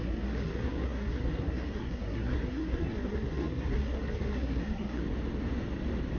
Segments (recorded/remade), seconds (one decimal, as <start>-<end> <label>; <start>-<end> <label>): 0.0-5.0 remade; 5.0-6.2 recorded